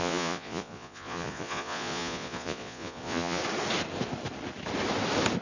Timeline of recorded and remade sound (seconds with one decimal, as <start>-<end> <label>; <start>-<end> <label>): 0.0-3.4 remade; 3.4-5.4 recorded